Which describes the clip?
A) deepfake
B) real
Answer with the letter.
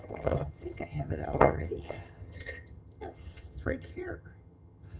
A